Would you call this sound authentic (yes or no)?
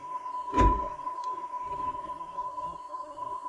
no